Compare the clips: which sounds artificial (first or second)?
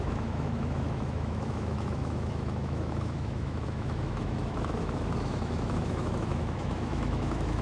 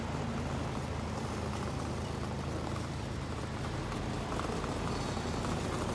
first